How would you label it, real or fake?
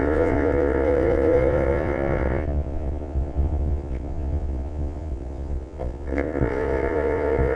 fake